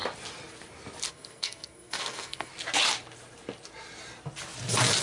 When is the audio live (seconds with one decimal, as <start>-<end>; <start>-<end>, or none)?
0.0-1.1; 2.5-5.0